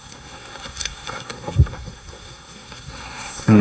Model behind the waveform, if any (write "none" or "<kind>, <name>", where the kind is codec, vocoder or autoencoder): codec, SNAC